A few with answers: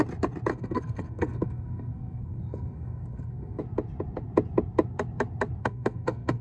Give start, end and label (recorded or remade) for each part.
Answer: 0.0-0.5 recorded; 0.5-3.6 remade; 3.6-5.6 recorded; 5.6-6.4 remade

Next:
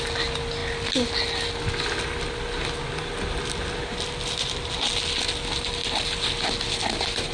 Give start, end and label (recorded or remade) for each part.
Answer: 0.0-7.3 recorded

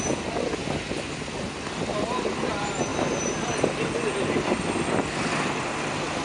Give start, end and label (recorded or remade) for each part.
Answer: 0.0-6.2 recorded

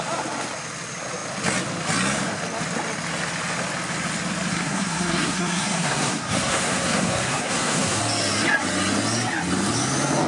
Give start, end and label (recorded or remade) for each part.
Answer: 0.0-4.5 recorded; 4.5-8.0 remade; 8.0-10.3 recorded

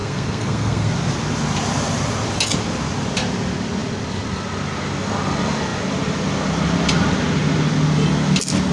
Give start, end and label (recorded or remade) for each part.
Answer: 0.0-0.9 remade; 0.9-8.7 recorded